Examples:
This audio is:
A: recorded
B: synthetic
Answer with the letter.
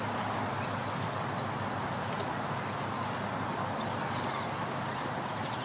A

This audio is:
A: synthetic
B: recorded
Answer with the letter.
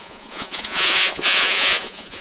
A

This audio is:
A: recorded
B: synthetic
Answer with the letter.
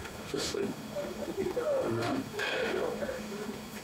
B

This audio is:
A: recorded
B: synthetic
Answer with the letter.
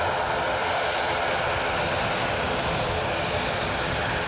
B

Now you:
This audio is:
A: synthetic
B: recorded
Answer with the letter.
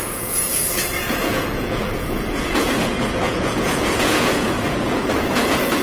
A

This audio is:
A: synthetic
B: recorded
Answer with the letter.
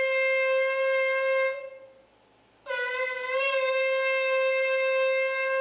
B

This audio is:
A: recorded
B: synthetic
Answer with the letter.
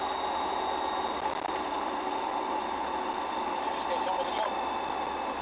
A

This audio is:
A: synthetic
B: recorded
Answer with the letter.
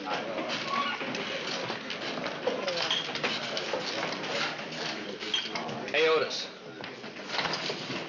B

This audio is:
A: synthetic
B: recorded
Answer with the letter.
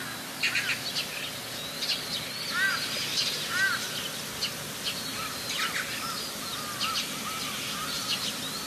B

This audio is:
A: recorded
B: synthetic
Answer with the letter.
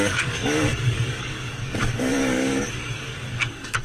B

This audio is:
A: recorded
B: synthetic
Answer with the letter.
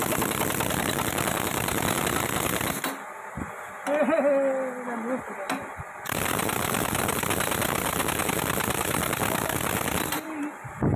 A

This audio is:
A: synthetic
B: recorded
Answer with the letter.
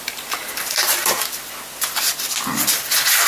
B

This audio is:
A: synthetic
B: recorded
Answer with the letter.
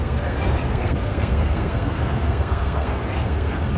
A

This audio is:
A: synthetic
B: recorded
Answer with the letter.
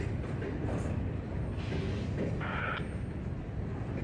B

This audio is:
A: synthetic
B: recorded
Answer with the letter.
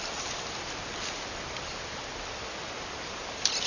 B